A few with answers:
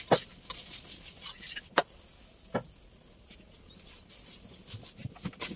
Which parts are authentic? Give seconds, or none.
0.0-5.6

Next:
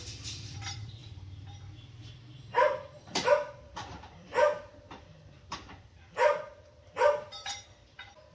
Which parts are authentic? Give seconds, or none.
none